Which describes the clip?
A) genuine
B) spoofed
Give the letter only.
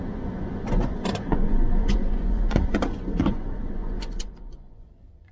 B